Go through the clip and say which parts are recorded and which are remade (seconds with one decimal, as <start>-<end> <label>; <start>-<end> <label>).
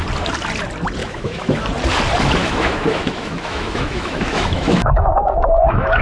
0.0-1.0 recorded; 1.0-1.6 remade; 1.6-2.4 recorded; 2.4-6.0 remade